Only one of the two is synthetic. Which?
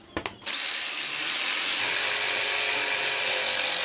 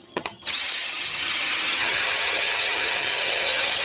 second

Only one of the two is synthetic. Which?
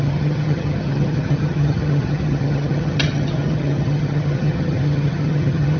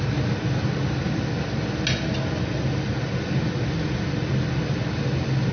first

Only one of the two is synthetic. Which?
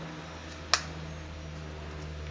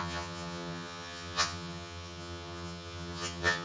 second